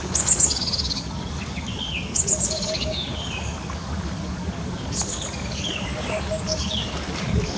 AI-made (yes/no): yes